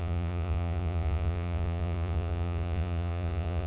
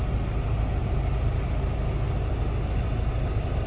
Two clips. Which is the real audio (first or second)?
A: second